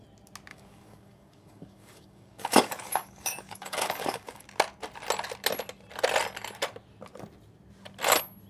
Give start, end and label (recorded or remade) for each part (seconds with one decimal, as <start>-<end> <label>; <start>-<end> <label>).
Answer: 0.0-0.5 recorded; 0.5-4.4 remade; 4.4-8.5 recorded